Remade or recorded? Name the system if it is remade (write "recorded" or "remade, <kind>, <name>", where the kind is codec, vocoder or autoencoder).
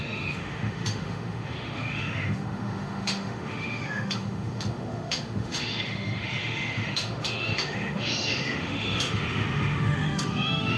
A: remade, autoencoder, DAC-VAE